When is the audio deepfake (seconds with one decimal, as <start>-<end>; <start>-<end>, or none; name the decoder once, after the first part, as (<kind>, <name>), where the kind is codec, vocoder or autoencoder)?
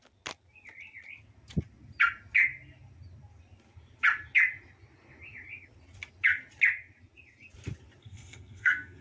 8.0-9.0 (codec, SNAC)